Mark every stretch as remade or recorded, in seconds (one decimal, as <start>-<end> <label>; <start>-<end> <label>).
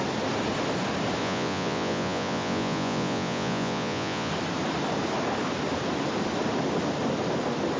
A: 0.0-1.2 recorded; 1.2-4.3 remade; 4.3-7.8 recorded